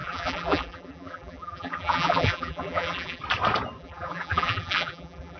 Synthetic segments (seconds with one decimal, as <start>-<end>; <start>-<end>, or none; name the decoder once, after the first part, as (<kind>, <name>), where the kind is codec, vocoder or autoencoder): 0.0-3.2 (vocoder, BigVGAN v2); 3.8-5.4